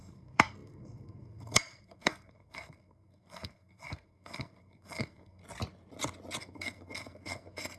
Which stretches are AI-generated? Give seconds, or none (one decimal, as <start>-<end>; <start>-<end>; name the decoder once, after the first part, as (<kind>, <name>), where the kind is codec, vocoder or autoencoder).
0.0-5.4 (codec, SNAC); 6.4-7.8